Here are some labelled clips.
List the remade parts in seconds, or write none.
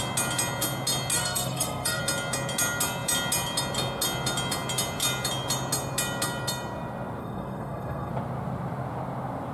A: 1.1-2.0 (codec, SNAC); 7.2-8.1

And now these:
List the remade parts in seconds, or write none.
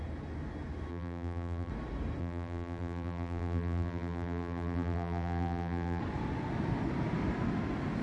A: 0.9-1.7 (vocoder, BigVGAN v2); 2.2-6.0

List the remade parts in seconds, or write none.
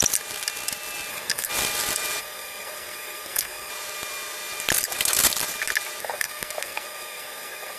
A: 1.1-1.5 (codec, SNAC); 2.2-3.7; 6.0-7.8